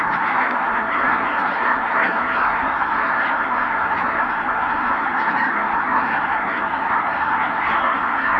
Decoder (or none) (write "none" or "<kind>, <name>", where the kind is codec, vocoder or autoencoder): codec, SNAC